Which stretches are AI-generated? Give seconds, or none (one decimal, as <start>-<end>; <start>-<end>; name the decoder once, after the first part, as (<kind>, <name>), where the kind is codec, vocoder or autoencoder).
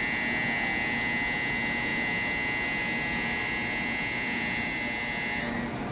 none